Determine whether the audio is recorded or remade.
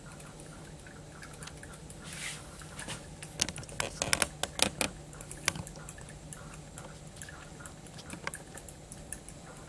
recorded